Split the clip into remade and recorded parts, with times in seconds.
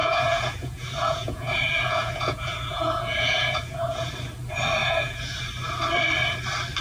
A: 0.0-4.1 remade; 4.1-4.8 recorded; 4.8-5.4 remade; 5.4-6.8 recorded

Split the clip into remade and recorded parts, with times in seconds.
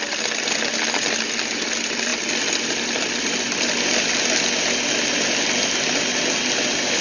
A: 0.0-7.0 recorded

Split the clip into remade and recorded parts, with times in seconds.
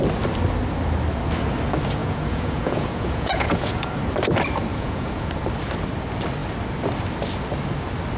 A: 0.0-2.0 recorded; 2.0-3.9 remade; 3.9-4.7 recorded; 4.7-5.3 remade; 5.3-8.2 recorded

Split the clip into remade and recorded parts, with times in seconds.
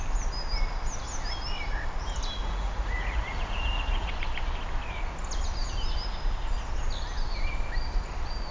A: 0.0-2.4 recorded; 2.4-4.1 remade; 4.1-8.5 recorded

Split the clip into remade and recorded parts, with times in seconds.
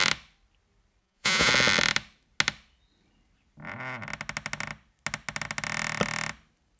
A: 0.0-1.0 recorded; 1.0-1.5 remade; 1.5-6.8 recorded